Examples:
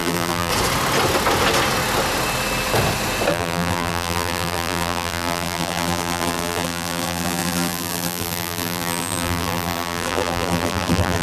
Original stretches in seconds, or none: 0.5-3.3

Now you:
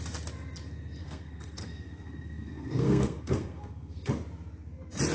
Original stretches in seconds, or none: 0.0-1.0; 4.1-5.1

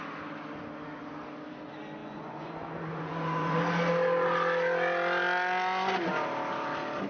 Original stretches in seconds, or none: 0.0-2.0; 3.6-7.1